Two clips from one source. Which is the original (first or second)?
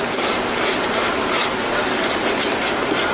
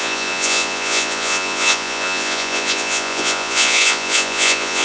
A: first